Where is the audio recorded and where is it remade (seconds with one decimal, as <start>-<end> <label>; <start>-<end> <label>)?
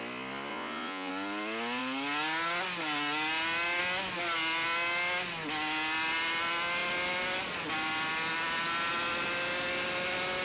0.0-0.5 recorded; 0.5-1.1 remade; 1.1-10.4 recorded